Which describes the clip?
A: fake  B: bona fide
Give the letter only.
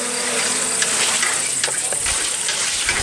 B